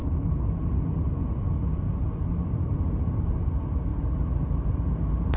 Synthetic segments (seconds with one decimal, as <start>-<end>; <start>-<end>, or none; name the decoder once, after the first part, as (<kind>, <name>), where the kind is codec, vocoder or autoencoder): none